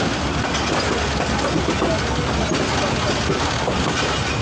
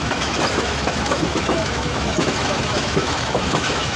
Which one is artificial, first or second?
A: second